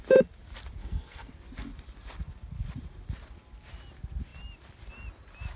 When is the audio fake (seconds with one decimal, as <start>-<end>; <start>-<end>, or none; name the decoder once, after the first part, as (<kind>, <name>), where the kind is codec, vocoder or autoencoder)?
0.8-1.3 (codec, SNAC)